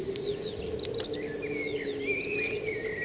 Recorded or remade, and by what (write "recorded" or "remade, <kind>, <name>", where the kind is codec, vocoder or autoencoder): recorded